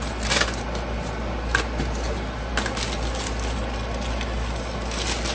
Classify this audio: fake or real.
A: real